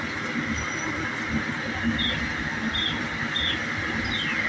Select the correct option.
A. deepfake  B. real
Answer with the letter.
B